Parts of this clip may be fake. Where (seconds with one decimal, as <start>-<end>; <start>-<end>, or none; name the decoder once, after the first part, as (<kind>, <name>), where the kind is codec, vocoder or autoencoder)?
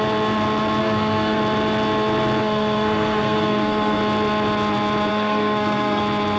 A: 0.8-1.4 (codec, SNAC); 2.4-4.0; 5.1-6.0